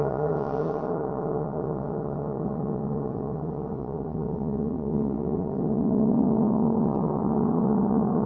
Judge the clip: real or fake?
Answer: fake